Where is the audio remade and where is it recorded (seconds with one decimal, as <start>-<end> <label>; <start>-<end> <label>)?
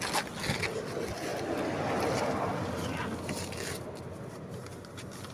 0.0-5.3 recorded